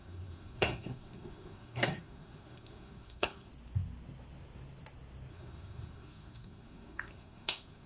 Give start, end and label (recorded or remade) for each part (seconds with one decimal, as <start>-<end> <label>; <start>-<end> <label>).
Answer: 0.0-3.5 remade; 3.5-5.3 recorded; 5.3-7.9 remade